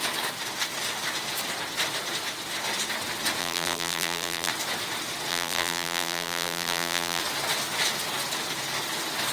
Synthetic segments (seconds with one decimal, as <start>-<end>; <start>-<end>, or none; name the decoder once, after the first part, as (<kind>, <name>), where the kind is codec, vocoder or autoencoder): 3.4-4.5 (vocoder, BigVGAN v2); 5.3-7.2